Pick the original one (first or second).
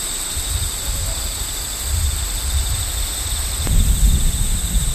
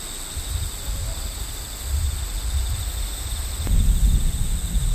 second